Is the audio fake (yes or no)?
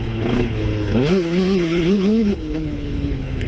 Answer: yes